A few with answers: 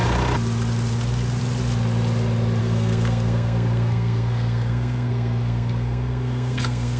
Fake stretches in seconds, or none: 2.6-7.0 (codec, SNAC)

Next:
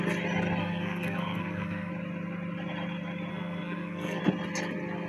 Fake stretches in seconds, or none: 0.6-1.9 (codec, SNAC); 3.3-4.2

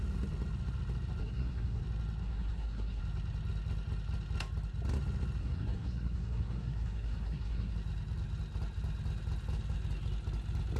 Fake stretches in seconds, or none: 1.2-1.8 (codec, SNAC); 2.2-3.0; 5.4-7.7

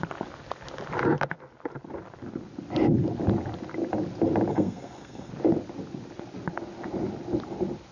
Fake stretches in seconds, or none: 4.5-5.3 (codec, SNAC)